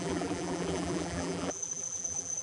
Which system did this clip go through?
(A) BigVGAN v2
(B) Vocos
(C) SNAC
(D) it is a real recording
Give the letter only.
A